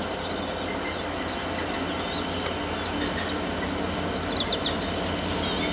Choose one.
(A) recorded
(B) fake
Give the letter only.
A